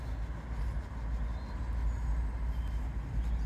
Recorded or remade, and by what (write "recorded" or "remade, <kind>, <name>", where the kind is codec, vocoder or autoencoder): recorded